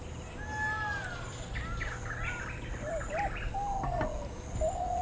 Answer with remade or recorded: recorded